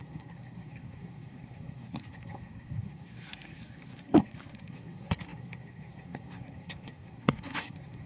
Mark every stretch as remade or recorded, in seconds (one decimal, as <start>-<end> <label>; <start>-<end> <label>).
0.0-8.1 remade